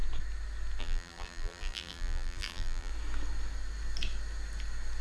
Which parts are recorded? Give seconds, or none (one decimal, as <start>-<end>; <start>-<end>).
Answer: 0.0-0.8; 2.9-5.0